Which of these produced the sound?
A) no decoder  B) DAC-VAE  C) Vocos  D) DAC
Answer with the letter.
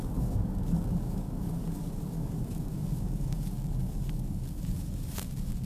D